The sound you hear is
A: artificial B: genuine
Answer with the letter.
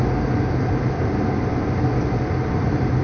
B